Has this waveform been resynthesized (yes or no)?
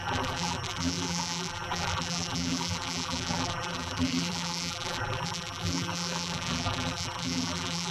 yes